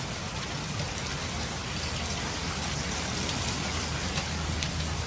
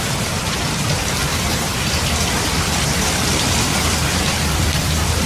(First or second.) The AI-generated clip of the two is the second